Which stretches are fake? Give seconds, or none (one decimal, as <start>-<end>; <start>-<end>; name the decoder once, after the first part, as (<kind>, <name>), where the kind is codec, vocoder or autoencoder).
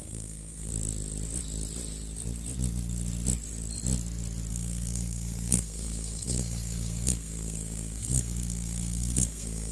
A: 0.0-0.7 (codec, SNAC); 4.5-9.7